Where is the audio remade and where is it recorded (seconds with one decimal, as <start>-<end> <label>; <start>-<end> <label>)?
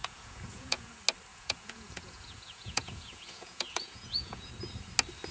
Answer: 0.0-0.9 remade; 0.9-1.3 recorded; 1.3-4.5 remade; 4.5-5.3 recorded